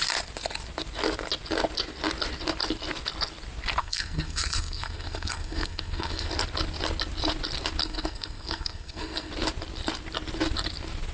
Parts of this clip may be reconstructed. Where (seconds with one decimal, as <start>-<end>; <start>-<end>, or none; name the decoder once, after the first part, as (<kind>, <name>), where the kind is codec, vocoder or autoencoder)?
3.8-6.3 (codec, SNAC); 7.8-9.3